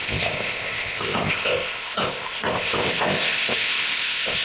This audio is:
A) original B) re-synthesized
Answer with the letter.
B